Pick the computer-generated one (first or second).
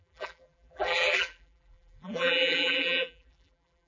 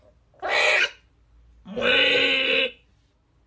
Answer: first